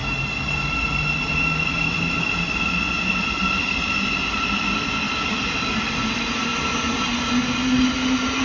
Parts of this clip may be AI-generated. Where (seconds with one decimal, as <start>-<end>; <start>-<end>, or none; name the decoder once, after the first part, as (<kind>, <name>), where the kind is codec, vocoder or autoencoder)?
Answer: 0.0-2.6 (vocoder, BigVGAN v2); 3.1-5.0; 6.5-7.2